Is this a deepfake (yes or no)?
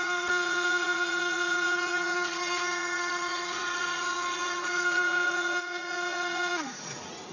yes